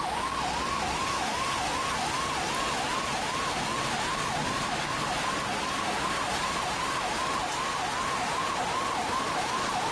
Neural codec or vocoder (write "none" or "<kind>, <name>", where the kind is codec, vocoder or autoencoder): none